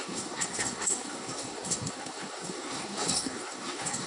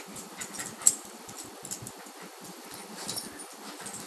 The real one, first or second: second